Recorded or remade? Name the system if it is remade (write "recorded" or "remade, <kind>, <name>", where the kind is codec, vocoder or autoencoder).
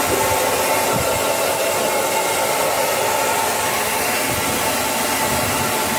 recorded